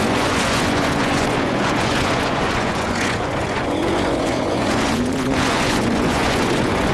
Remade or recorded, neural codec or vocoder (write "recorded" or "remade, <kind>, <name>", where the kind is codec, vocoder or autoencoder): remade, vocoder, Vocos